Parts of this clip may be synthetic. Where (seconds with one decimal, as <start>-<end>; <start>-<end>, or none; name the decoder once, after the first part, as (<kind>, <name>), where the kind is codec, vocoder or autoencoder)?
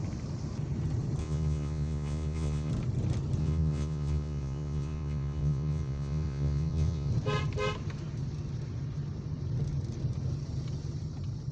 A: 1.2-2.7 (vocoder, Vocos); 3.4-7.1